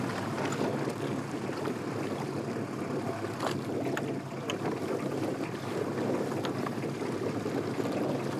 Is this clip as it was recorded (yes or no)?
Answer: yes